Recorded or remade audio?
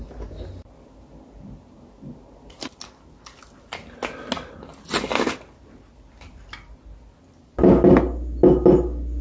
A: recorded